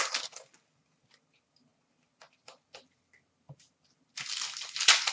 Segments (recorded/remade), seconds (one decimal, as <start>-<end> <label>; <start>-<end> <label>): 0.0-5.1 recorded